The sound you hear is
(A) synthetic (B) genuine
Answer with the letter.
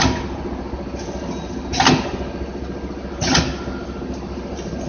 B